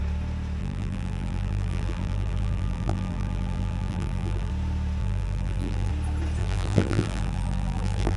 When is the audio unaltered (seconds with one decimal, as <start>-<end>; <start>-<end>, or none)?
0.0-0.6; 4.5-5.0; 5.9-6.4